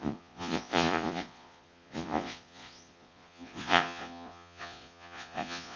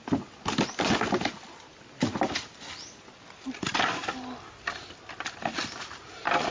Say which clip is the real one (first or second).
second